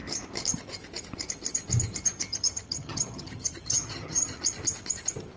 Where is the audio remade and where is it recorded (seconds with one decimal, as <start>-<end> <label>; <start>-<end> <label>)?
0.0-2.3 recorded; 2.3-4.4 remade; 4.4-5.4 recorded